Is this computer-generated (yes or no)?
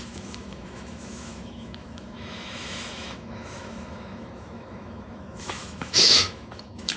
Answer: yes